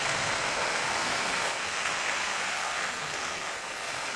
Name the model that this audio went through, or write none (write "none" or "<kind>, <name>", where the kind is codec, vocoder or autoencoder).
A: codec, SNAC